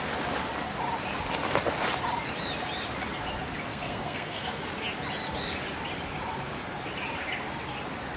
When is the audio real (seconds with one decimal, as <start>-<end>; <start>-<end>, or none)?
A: 0.0-3.7; 4.6-8.2